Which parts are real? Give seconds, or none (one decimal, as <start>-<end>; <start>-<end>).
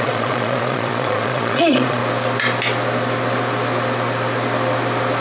2.0-5.2